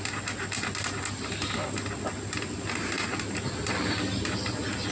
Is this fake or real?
real